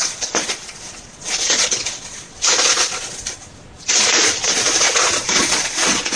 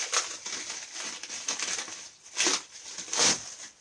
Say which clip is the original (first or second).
second